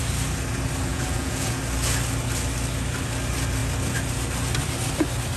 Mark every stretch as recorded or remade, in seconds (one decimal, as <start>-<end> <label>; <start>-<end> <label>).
0.0-0.9 recorded; 0.9-1.6 remade; 1.6-5.4 recorded